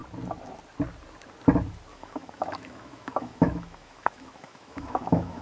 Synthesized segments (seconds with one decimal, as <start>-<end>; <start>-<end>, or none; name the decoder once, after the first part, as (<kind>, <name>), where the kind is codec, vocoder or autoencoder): 1.9-5.4 (autoencoder, DAC-VAE)